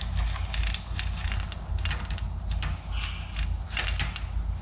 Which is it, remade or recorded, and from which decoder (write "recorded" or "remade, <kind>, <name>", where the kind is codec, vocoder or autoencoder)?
recorded